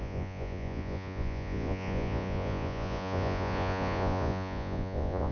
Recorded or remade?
remade